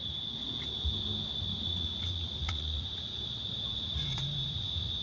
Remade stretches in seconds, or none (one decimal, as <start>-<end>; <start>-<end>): 1.5-3.2; 3.7-5.0